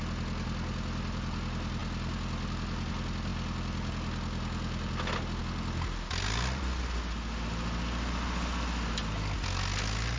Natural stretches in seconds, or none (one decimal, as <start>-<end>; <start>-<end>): 0.0-10.2